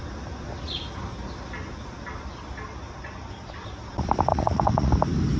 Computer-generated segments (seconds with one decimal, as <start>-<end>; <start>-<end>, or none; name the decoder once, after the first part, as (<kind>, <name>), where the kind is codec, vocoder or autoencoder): 4.3-4.9 (vocoder, Vocos)